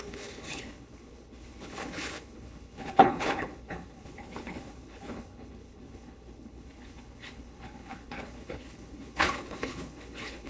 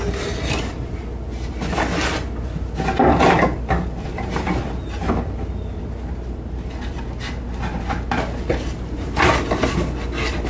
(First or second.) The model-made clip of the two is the first